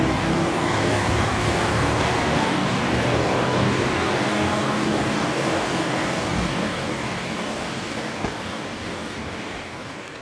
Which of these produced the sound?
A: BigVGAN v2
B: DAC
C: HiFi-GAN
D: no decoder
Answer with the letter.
B